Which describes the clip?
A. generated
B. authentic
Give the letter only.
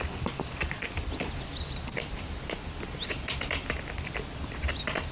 B